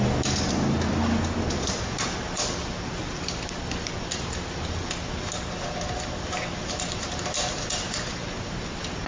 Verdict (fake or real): real